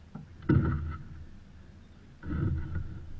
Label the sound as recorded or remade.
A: recorded